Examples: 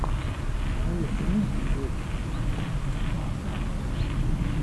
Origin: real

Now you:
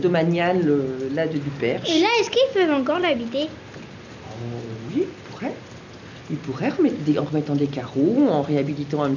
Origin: real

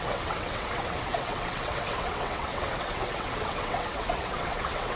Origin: fake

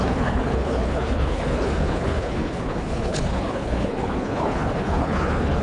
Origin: fake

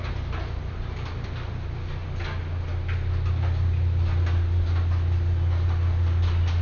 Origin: real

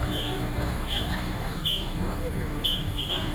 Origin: fake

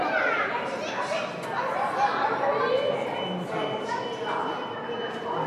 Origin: real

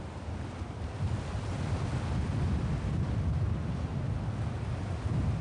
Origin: real